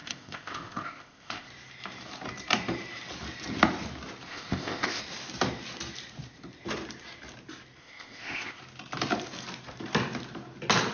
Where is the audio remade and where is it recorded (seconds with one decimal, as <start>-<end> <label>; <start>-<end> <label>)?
0.0-1.5 remade; 1.5-4.3 recorded; 4.3-5.0 remade; 5.0-7.8 recorded; 7.8-8.6 remade; 8.6-10.9 recorded

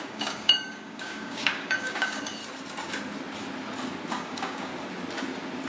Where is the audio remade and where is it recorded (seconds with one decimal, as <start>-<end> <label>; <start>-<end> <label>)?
0.0-2.4 remade; 2.4-4.1 recorded; 4.1-4.7 remade; 4.7-5.7 recorded